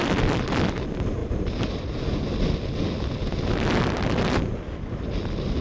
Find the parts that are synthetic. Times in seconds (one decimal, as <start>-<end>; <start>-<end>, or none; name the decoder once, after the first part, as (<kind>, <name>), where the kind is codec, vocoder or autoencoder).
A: none